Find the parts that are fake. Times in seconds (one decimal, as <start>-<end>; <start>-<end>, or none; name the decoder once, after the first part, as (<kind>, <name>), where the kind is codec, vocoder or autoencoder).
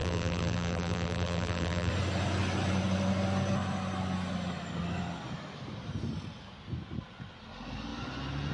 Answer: 0.0-1.9 (vocoder, BigVGAN v2)